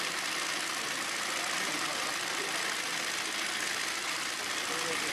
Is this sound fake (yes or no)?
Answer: no